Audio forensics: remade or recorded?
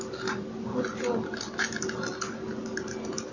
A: recorded